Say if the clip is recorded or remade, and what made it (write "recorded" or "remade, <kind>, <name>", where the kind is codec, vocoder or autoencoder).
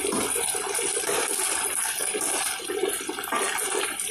remade, vocoder, BigVGAN v2